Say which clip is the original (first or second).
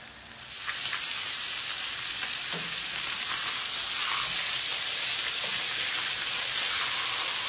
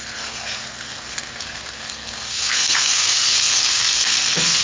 first